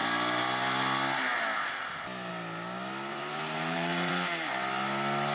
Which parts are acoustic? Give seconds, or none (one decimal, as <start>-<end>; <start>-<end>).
0.0-3.1; 4.1-5.3